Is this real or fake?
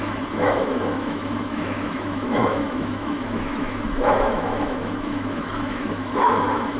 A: fake